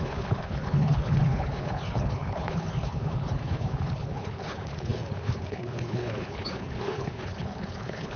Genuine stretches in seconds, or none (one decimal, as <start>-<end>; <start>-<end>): none